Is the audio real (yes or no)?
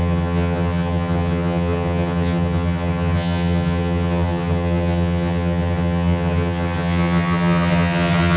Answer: no